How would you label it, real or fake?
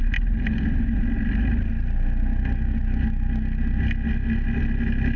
real